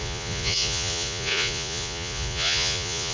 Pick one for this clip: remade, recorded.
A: remade